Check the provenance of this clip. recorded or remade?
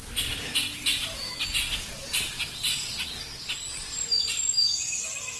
recorded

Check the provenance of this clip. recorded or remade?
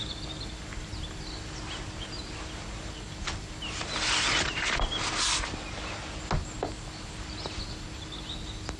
recorded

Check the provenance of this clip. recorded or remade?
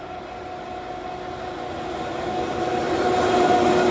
recorded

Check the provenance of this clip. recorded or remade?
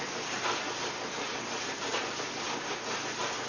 recorded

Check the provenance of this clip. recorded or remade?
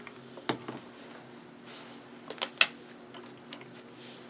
recorded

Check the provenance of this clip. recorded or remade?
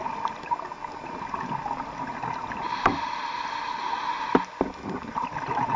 recorded